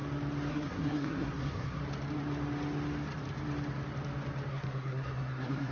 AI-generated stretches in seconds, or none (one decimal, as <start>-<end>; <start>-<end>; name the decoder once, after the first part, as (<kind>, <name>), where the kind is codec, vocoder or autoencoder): 0.5-1.8 (codec, SNAC); 4.5-5.7